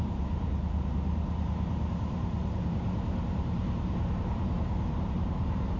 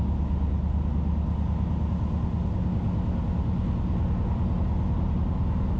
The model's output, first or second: first